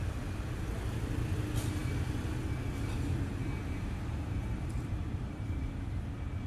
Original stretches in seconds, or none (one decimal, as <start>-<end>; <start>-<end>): 0.0-3.4; 6.1-6.5